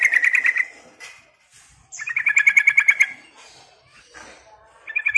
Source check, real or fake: real